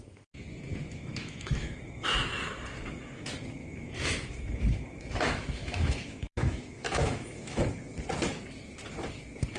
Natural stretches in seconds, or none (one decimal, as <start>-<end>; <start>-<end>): 0.0-0.8; 2.3-3.6; 7.6-9.6